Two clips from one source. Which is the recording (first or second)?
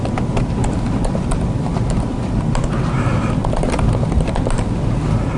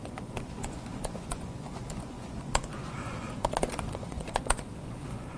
first